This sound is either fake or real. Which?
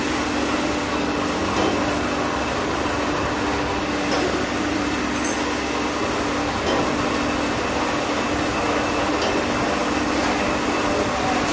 real